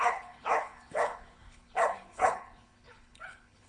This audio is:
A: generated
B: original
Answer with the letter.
A